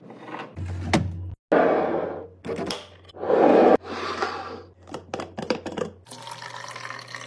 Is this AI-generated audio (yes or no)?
no